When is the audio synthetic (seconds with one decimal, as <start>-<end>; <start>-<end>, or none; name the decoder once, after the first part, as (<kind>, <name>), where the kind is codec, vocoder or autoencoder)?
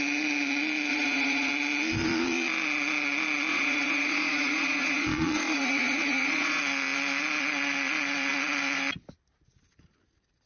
0.9-1.5 (vocoder, Vocos); 3.5-6.6